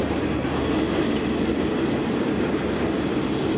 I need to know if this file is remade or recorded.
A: recorded